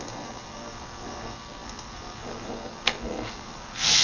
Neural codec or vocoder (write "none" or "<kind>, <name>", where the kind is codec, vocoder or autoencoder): codec, SNAC